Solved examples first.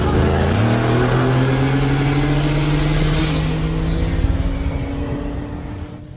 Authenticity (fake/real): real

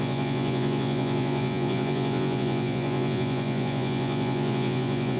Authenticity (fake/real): fake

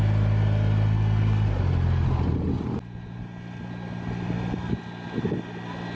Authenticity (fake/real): real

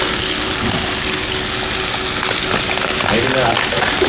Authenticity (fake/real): real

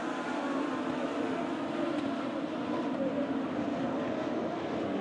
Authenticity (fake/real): real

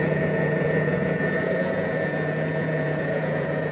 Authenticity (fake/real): fake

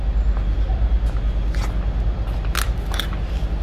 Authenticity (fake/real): real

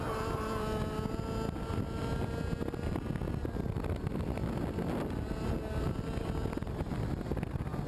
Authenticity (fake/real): real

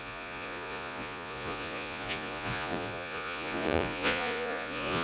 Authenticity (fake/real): fake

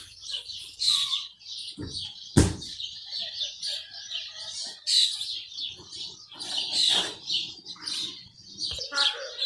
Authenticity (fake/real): fake